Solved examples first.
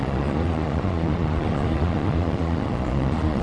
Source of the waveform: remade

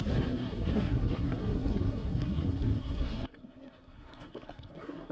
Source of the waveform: remade